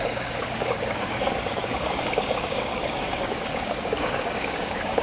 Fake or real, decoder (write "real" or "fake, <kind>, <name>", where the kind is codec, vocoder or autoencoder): fake, codec, DAC